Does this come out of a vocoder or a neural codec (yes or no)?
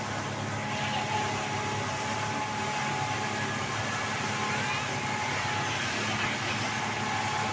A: no